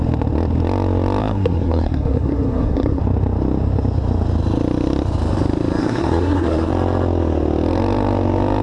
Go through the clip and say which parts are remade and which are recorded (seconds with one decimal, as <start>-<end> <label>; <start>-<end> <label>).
0.0-1.2 recorded; 1.2-3.0 remade; 3.0-5.8 recorded; 5.8-6.7 remade; 6.7-8.6 recorded